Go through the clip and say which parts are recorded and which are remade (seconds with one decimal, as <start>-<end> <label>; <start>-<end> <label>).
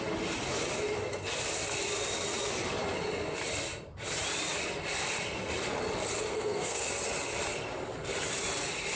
0.0-6.3 recorded; 6.3-6.9 remade; 6.9-9.0 recorded